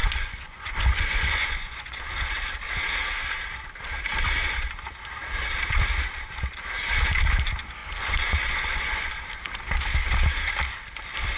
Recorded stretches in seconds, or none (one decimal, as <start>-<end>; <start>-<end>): 2.0-7.8; 9.1-11.4